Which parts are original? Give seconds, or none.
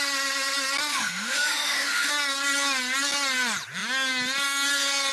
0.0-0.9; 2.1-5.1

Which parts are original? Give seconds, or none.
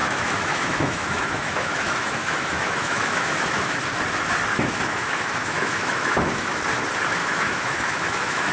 3.8-4.5; 6.6-7.2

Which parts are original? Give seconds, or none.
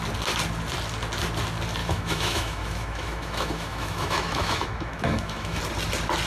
0.0-1.8; 5.6-6.3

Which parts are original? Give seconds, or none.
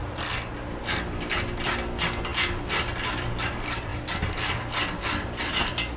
0.0-6.0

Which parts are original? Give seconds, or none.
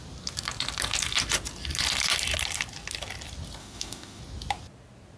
0.0-3.6; 4.2-5.2